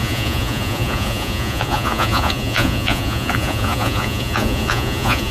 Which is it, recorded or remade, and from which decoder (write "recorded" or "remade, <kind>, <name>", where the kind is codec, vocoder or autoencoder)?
remade, vocoder, Vocos